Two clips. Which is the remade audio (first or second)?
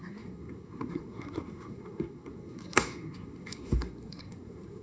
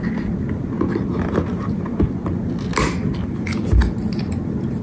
first